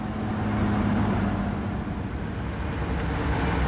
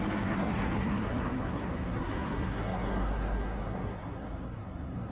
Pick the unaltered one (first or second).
first